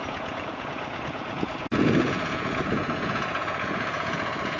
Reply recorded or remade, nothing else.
remade